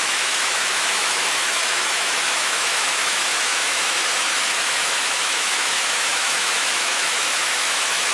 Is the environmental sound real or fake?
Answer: fake